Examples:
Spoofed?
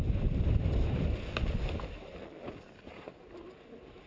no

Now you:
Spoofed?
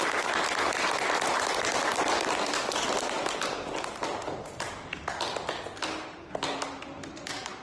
no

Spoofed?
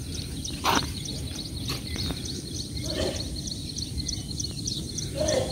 no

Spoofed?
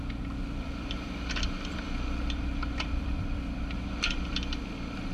yes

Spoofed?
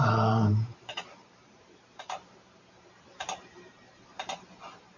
yes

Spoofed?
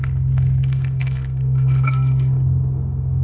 yes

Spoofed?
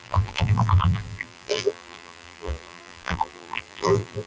yes